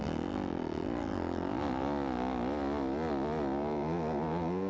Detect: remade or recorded recorded